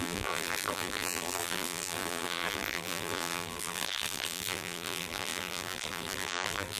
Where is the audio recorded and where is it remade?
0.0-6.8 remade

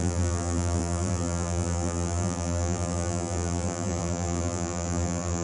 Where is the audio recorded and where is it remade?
0.0-5.4 remade

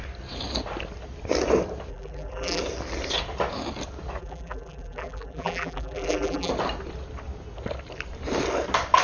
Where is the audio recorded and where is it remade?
0.0-1.9 recorded; 1.9-2.6 remade; 2.6-4.2 recorded; 4.2-6.5 remade; 6.5-9.0 recorded

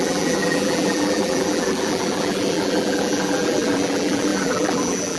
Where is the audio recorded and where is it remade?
0.0-5.2 remade

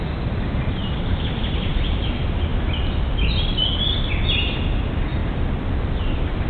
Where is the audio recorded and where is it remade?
0.0-0.8 recorded; 0.8-1.7 remade; 1.7-6.5 recorded

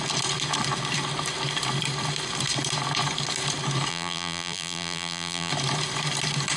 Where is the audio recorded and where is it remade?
0.0-3.9 recorded; 3.9-5.5 remade; 5.5-6.6 recorded

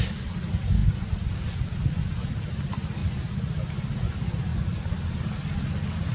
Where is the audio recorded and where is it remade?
0.0-3.0 recorded; 3.0-3.7 remade; 3.7-6.1 recorded

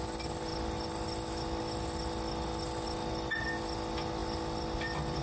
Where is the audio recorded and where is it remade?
0.0-5.2 recorded